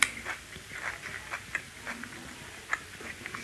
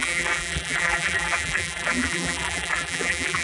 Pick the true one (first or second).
first